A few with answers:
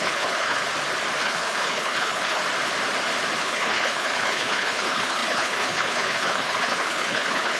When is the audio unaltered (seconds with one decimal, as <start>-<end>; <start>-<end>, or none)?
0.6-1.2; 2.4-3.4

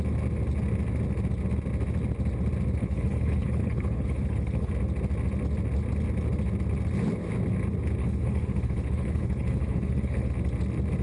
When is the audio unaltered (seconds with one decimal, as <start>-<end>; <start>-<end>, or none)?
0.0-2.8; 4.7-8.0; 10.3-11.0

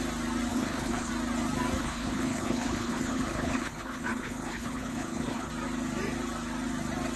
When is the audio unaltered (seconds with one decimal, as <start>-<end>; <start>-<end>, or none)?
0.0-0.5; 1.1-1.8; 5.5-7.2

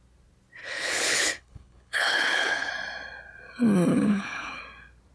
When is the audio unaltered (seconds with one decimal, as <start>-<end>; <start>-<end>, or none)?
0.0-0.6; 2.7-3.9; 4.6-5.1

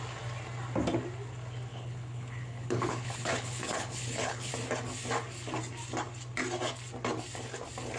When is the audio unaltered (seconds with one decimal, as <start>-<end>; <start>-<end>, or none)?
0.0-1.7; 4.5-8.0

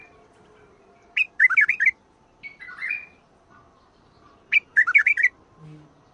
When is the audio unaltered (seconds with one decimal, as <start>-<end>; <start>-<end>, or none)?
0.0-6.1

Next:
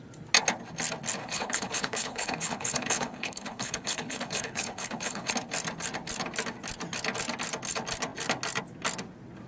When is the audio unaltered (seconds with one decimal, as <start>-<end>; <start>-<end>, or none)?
0.0-1.2; 5.3-9.5